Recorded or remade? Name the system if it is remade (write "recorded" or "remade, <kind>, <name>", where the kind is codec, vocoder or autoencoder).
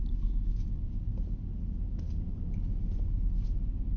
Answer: recorded